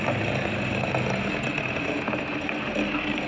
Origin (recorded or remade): recorded